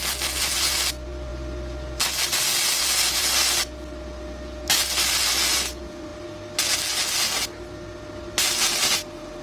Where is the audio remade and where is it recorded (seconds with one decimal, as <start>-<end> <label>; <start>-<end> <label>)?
0.0-9.4 recorded